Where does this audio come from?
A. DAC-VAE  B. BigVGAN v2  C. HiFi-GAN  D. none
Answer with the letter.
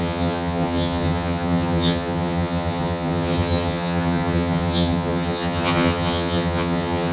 C